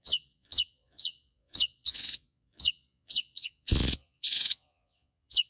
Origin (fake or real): fake